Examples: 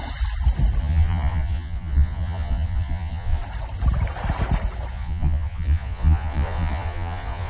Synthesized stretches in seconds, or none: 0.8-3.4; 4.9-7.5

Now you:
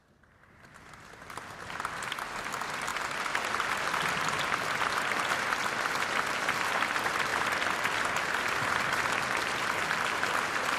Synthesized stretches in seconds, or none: none